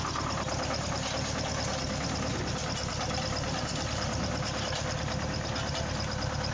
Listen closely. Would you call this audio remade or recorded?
recorded